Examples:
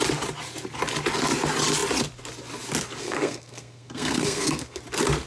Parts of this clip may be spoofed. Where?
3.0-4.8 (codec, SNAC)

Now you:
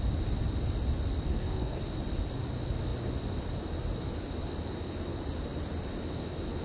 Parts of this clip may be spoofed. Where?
1.3-1.8 (codec, SNAC)

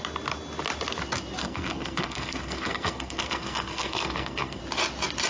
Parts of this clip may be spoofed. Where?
1.4-4.6 (codec, SNAC)

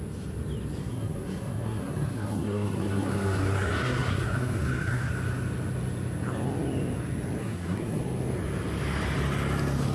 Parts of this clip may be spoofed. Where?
0.8-5.1 (codec, SNAC); 7.4-8.0

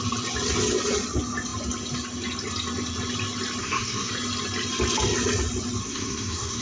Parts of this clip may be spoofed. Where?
3.6-4.1 (codec, SNAC); 5.8-6.6

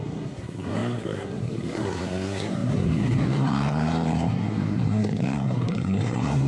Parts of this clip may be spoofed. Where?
0.0-6.5 (codec, SNAC)